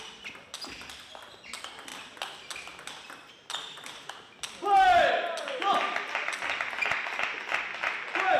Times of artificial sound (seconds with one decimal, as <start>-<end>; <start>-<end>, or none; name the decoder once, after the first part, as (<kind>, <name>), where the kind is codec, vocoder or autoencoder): none